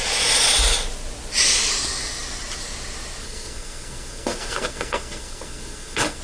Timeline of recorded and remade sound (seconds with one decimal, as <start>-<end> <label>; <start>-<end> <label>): 0.0-3.2 recorded; 3.2-6.2 remade